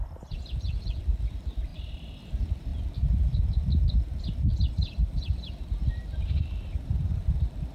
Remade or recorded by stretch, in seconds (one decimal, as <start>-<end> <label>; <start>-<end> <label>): 0.0-2.7 remade; 2.7-5.9 recorded; 5.9-7.7 remade